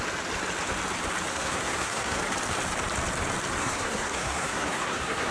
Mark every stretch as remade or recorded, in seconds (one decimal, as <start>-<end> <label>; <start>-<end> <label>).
0.0-1.3 recorded; 1.3-2.2 remade; 2.2-3.6 recorded; 3.6-5.3 remade